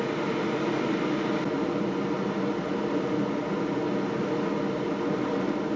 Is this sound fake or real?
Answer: real